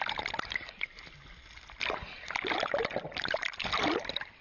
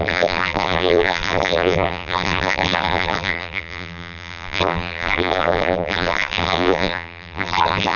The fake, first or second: second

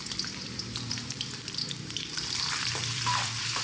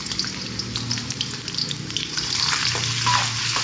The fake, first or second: first